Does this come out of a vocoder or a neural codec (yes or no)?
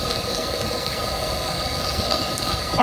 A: yes